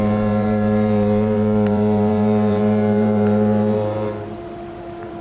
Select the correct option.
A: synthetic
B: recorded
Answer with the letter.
A